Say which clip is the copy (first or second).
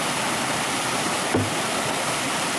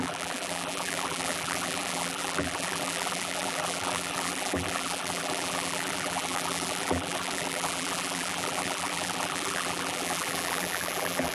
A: second